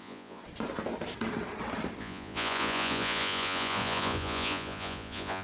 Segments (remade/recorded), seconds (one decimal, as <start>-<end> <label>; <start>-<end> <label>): 0.0-0.4 remade; 0.4-2.0 recorded; 2.0-5.4 remade